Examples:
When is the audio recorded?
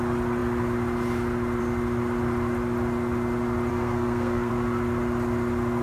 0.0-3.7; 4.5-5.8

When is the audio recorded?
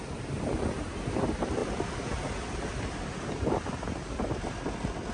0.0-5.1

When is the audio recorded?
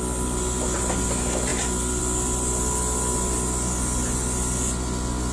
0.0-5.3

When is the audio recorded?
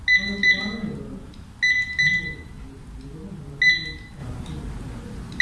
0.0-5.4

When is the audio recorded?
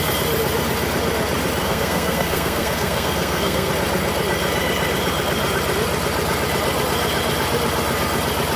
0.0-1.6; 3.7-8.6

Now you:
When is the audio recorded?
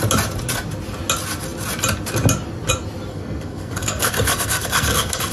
0.0-3.1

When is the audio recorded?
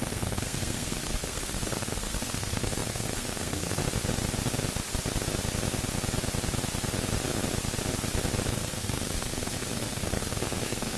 3.8-8.5